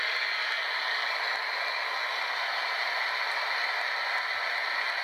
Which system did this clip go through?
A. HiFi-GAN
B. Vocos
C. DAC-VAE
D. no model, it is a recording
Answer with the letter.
D